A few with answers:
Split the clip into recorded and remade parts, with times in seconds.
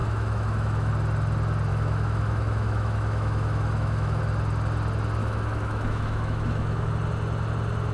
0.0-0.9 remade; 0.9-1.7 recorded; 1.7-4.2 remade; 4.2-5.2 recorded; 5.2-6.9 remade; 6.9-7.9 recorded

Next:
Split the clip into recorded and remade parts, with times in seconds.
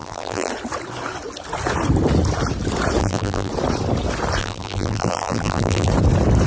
0.0-0.5 remade; 0.5-3.0 recorded; 3.0-3.5 remade; 3.5-4.4 recorded; 4.4-5.9 remade; 5.9-6.5 recorded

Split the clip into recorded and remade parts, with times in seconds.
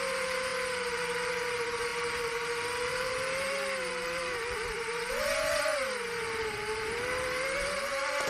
0.0-5.7 remade; 5.7-6.4 recorded; 6.4-8.3 remade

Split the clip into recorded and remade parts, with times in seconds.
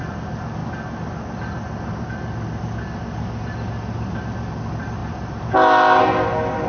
0.0-6.7 recorded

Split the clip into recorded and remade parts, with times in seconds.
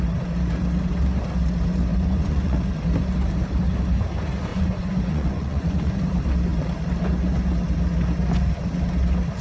0.0-1.9 recorded; 1.9-2.7 remade; 2.7-4.5 recorded; 4.5-6.0 remade; 6.0-9.4 recorded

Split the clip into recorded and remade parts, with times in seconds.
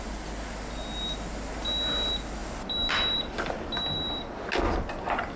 0.0-2.4 recorded; 2.4-4.2 remade; 4.2-5.4 recorded